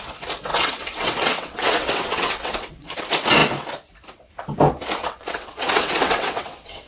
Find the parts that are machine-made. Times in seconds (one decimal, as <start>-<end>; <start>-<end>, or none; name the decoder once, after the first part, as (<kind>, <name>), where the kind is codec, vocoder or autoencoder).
0.5-3.0 (vocoder, WaveNeXt); 5.0-6.9